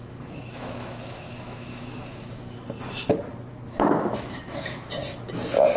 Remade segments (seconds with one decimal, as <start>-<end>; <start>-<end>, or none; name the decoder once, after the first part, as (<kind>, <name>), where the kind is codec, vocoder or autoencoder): 0.0-2.4 (autoencoder, DAC-VAE); 3.5-4.9